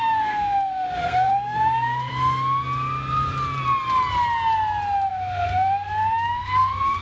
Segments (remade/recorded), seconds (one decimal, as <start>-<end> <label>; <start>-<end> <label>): 0.0-2.1 remade; 2.1-5.1 recorded; 5.1-7.0 remade